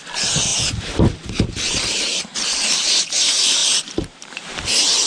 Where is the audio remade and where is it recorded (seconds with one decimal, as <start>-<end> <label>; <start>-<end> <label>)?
0.0-0.5 recorded; 0.5-3.0 remade; 3.0-3.6 recorded; 3.6-5.1 remade